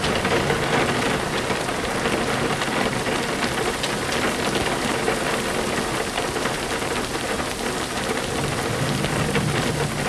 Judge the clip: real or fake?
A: real